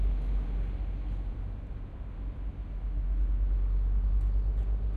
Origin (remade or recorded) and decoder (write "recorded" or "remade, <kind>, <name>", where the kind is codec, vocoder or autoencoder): recorded